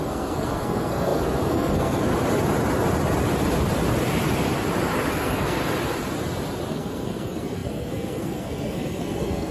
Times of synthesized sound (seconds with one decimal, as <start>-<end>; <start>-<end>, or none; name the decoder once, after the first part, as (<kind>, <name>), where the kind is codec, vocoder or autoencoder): 0.0-2.1 (codec, SNAC); 5.1-5.6; 6.7-9.5